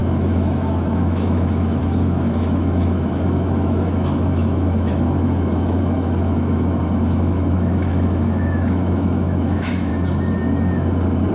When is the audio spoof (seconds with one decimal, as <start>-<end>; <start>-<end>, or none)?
0.0-9.9